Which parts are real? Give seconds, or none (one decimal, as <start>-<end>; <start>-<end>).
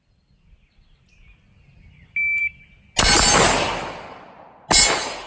0.0-5.3